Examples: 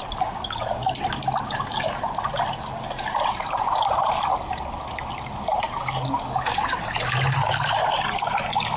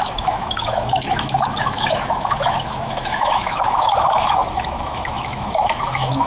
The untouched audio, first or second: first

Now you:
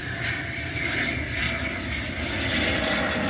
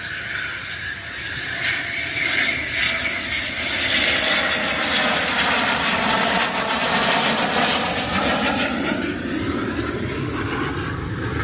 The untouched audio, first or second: first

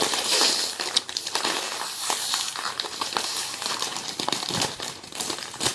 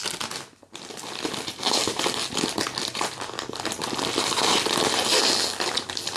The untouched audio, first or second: second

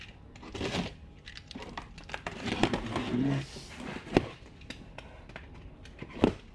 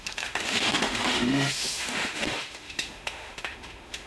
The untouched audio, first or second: first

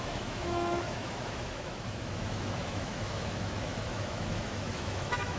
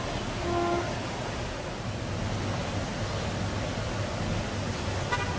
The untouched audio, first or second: second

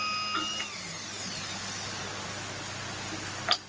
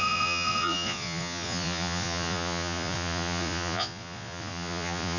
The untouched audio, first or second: first